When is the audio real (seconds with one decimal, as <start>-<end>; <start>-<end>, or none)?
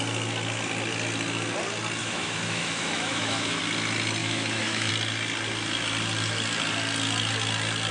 0.0-2.0; 3.6-4.2; 4.9-7.9